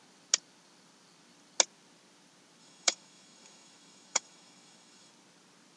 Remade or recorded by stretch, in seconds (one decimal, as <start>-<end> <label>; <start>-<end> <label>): 0.0-2.6 recorded; 2.6-5.1 remade; 5.1-5.8 recorded